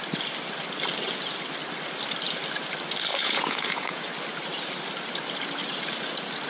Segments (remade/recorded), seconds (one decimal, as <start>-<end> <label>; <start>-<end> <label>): 0.0-3.1 recorded; 3.1-4.1 remade; 4.1-6.5 recorded